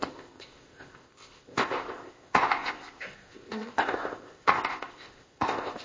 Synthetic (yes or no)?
yes